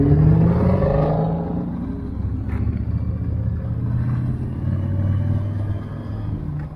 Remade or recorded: recorded